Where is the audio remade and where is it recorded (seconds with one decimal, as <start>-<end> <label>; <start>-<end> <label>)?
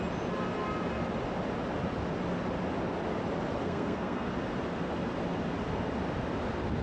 0.0-3.6 recorded; 3.6-4.3 remade; 4.3-6.8 recorded